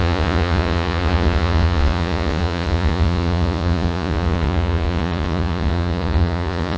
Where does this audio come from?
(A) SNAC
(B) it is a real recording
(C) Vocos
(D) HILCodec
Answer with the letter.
C